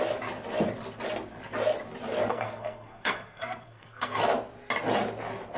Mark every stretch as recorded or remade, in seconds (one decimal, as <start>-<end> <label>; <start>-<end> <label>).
0.0-2.3 recorded; 2.3-4.2 remade; 4.2-5.6 recorded